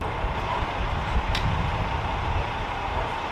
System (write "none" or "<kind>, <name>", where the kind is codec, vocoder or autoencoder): vocoder, BigVGAN v2